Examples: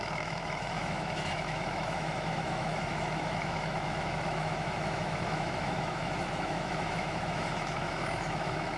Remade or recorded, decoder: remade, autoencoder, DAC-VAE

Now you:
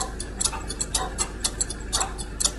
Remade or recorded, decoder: recorded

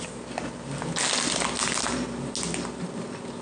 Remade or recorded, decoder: recorded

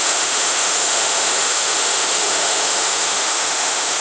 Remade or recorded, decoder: remade, autoencoder, DAC-VAE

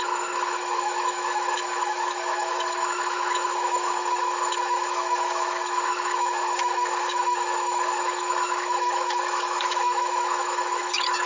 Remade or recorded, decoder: remade, autoencoder, DAC-VAE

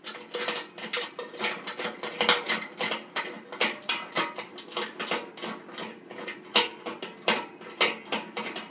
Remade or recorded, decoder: recorded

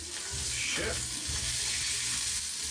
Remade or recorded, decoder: recorded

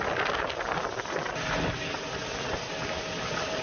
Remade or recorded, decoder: recorded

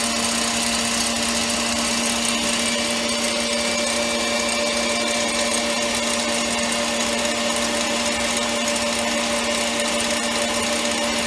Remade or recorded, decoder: recorded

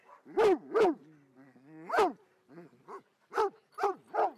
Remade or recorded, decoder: recorded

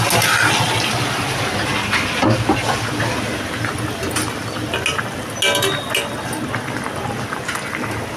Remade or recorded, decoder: recorded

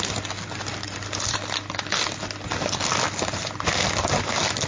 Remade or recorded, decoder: recorded